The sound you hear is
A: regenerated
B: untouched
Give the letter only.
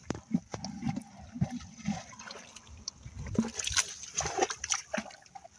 B